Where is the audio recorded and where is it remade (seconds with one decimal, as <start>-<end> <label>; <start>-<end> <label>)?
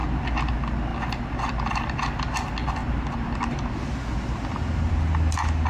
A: 0.0-5.7 recorded